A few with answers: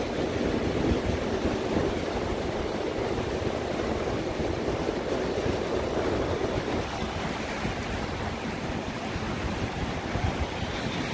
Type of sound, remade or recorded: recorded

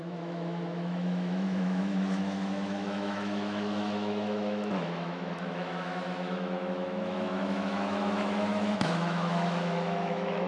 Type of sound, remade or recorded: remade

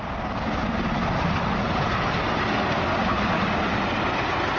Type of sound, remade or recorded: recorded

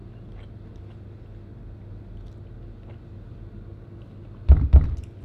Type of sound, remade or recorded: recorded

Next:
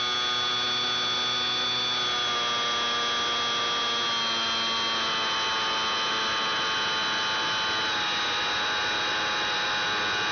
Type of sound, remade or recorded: recorded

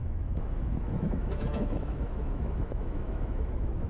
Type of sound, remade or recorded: remade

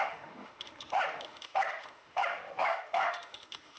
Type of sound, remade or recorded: remade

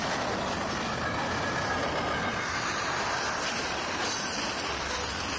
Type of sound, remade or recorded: recorded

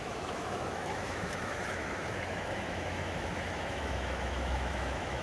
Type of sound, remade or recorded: remade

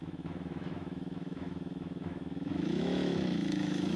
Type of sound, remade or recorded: remade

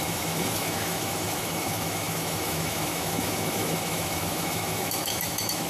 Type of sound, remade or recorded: remade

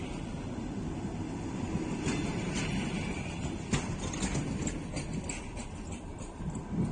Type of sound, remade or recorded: recorded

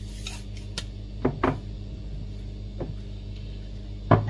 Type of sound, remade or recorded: recorded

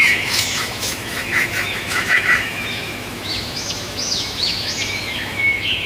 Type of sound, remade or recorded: remade